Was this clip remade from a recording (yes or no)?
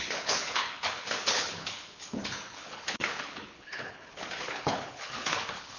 yes